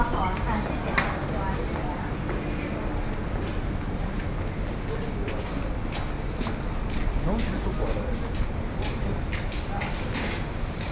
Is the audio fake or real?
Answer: real